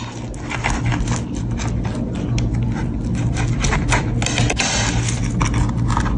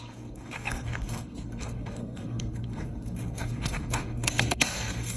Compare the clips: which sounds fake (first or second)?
second